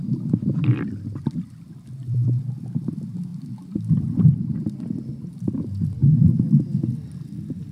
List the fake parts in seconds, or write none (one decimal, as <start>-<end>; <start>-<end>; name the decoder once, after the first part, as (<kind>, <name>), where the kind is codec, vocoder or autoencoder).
0.0-7.7 (vocoder, BigVGAN v2)